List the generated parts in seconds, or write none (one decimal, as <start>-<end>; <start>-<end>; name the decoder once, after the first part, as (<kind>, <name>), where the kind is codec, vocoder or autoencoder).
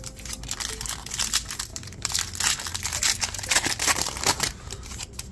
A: 1.7-2.2 (vocoder, BigVGAN v2); 2.7-5.3